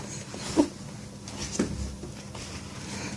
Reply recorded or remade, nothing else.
recorded